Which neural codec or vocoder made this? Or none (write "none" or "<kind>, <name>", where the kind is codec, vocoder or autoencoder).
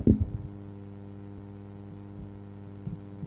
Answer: none